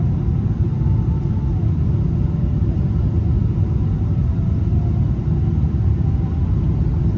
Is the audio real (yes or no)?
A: yes